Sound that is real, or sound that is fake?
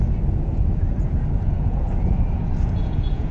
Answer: fake